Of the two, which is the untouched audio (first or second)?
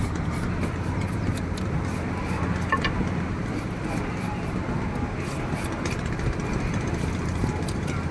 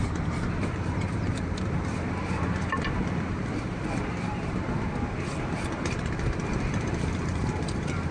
first